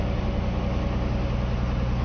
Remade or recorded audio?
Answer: recorded